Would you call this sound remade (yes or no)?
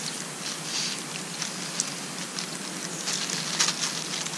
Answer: no